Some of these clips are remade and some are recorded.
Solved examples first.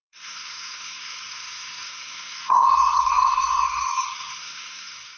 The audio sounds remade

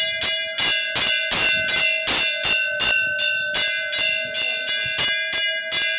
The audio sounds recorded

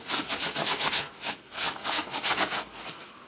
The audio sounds remade